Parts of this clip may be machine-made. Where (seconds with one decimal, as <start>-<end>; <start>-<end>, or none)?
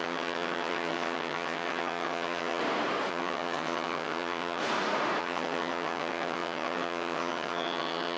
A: 0.0-2.6; 3.1-4.6; 5.2-8.2